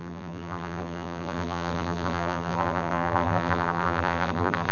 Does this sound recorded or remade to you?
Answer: remade